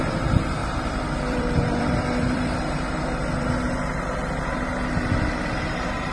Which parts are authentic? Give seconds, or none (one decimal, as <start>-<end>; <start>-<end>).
0.0-0.6; 3.6-6.1